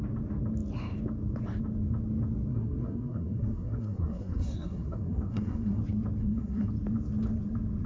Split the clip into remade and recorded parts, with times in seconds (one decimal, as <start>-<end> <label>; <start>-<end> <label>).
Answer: 0.0-2.5 recorded; 2.5-5.8 remade; 5.8-6.2 recorded; 6.2-6.7 remade; 6.7-7.9 recorded